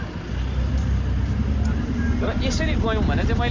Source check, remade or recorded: recorded